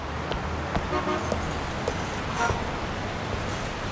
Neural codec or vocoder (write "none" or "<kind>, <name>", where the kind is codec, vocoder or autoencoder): none